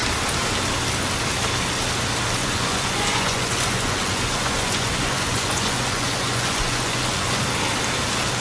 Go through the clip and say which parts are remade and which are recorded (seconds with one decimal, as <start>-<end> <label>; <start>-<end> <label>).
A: 0.0-2.4 recorded; 2.4-7.4 remade; 7.4-8.4 recorded